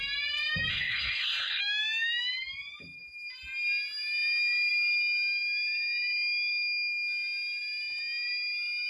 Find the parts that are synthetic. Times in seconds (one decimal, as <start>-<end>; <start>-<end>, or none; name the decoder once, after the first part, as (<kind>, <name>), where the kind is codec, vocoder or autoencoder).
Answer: 0.7-1.6 (codec, SNAC)